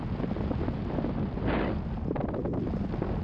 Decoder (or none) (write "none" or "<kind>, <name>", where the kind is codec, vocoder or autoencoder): none